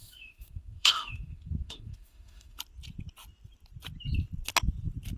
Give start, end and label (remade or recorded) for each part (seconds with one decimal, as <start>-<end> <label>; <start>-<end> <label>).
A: 0.0-2.6 remade; 2.6-5.2 recorded